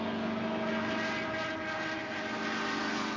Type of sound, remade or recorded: recorded